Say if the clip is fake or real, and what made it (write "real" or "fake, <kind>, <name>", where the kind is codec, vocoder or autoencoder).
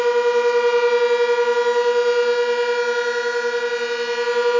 real